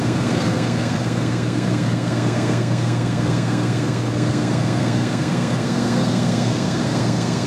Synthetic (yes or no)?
yes